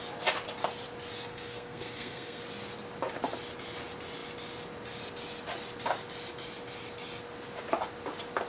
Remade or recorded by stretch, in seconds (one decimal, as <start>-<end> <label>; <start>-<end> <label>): 0.0-1.3 recorded; 1.3-2.4 remade; 2.4-8.5 recorded